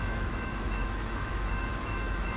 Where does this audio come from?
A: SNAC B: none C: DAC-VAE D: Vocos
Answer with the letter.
C